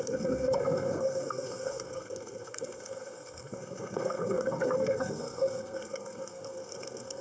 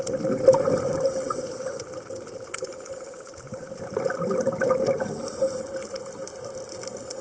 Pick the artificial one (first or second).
first